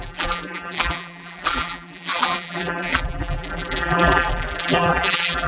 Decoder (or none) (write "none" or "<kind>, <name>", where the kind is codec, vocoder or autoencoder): vocoder, BigVGAN v2